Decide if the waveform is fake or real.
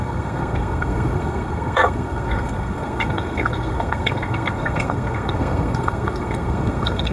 fake